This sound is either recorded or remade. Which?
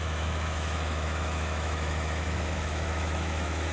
remade